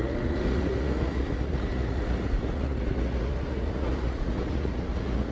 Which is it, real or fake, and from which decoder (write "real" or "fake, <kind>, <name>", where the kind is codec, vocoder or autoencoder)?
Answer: fake, vocoder, Vocos